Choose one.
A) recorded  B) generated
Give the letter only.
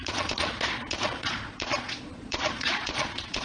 B